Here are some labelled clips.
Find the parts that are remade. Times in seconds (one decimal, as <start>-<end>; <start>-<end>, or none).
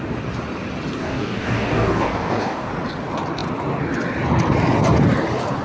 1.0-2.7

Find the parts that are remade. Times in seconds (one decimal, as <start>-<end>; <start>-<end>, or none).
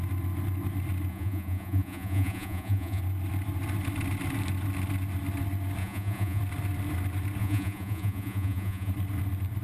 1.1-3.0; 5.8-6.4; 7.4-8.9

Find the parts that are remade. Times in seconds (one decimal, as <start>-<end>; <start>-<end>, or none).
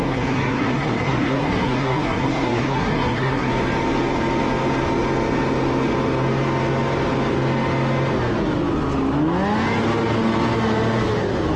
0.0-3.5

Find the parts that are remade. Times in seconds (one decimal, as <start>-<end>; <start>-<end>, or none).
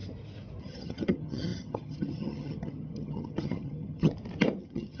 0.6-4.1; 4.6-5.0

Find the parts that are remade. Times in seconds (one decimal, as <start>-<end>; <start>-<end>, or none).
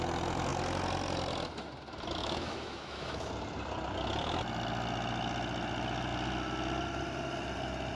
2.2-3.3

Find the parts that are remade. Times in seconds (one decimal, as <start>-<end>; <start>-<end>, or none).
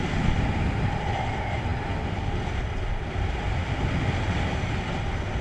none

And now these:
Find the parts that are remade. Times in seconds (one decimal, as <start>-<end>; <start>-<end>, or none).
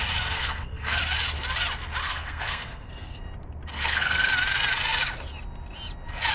0.4-1.0; 2.0-3.2; 3.7-4.3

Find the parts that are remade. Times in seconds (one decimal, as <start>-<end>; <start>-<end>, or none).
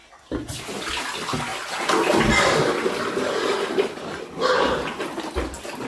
none